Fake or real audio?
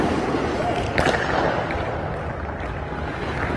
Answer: real